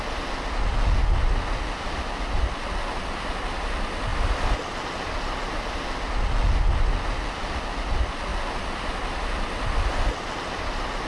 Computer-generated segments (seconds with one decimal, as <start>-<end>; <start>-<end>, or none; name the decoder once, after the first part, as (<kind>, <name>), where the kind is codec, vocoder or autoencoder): none